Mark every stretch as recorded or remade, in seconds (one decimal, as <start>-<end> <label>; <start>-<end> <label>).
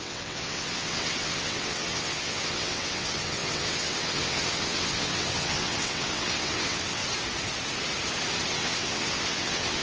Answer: 0.0-7.0 remade; 7.0-8.5 recorded; 8.5-9.8 remade